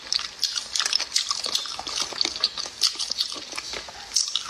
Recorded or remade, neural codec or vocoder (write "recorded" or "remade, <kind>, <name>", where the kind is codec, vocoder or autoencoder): recorded